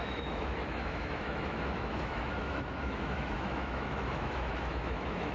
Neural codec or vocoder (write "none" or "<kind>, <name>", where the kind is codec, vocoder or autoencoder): autoencoder, DAC-VAE